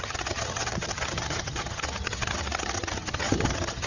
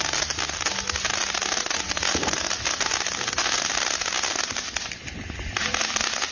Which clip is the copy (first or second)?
first